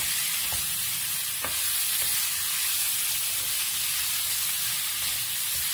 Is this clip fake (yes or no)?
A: no